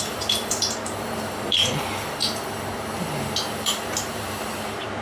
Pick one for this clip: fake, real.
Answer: fake